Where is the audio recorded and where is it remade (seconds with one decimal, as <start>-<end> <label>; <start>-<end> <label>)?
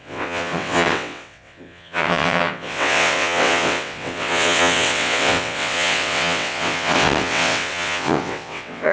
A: 0.0-8.9 remade